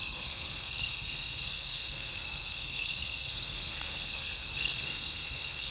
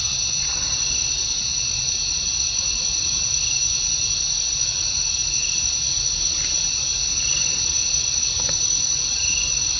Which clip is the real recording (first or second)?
second